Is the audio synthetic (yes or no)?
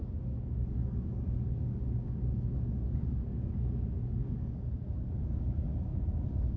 yes